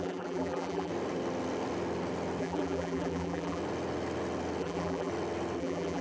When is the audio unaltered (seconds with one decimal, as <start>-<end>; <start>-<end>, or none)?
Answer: 0.9-2.4; 3.6-4.6; 5.1-5.6